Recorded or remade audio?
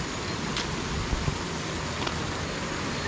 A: recorded